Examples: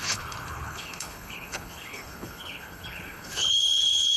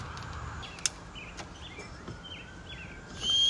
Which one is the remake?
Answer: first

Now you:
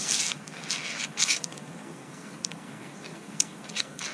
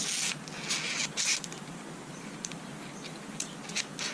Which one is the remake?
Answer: first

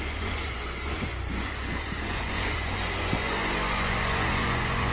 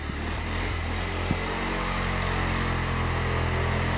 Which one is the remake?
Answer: first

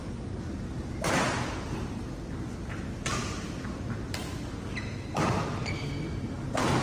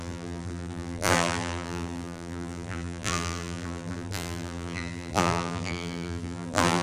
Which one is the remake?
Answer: second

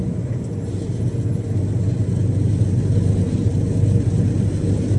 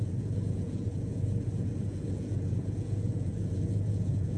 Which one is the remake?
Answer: second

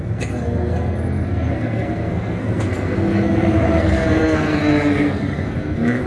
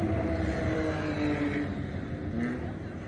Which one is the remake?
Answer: first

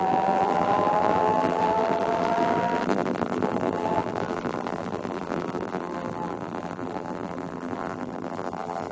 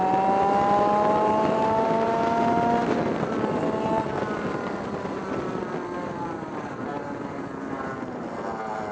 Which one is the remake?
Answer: first